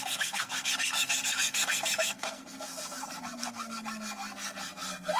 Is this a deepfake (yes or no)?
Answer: yes